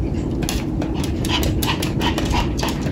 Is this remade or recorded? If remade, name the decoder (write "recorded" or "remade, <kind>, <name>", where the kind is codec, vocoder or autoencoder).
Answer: recorded